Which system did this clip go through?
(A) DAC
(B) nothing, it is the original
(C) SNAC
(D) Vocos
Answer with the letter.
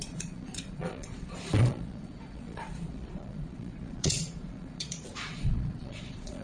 D